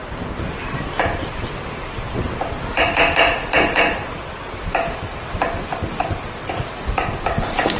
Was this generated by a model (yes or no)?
no